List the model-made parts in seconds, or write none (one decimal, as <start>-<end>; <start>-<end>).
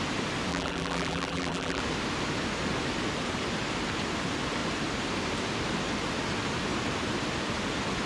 0.5-1.8